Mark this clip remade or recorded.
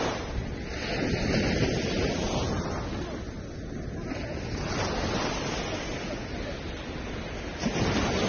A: recorded